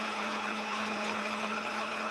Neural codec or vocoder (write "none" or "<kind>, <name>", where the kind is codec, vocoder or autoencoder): codec, HILCodec